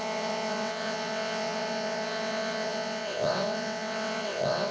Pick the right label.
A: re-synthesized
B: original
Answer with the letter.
A